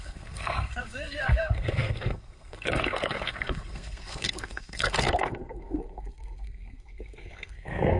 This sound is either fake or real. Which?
fake